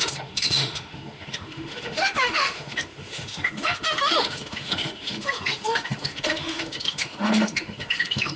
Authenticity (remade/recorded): remade